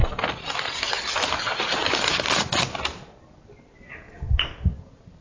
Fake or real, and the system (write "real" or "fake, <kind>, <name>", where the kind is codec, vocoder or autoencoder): real